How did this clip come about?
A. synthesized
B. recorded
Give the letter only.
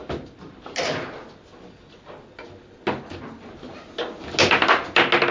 B